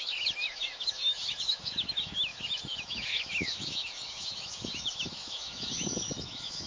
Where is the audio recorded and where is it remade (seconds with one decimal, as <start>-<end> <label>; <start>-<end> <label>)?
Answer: 0.0-6.7 remade